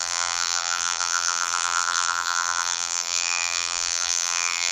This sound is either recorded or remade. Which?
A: remade